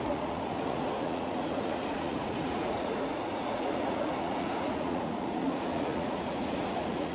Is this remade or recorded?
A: remade